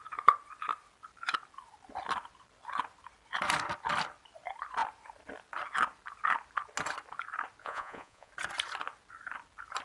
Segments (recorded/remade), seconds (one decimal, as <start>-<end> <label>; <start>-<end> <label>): 0.0-7.6 recorded; 7.6-8.3 remade; 8.3-9.8 recorded